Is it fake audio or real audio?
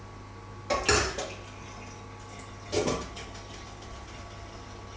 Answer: real